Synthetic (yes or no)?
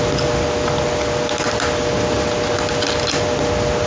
no